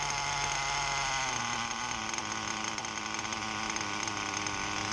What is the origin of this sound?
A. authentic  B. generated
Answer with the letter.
A